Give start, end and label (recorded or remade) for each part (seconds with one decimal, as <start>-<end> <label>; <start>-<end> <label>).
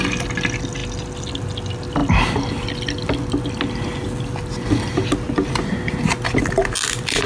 0.0-7.3 recorded